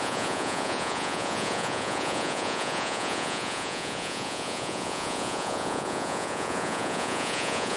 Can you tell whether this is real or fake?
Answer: fake